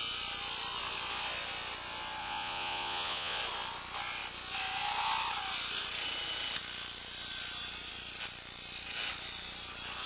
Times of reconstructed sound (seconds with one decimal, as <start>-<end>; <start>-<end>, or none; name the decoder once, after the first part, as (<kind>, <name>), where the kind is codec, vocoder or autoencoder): 2.2-3.4 (vocoder, Vocos)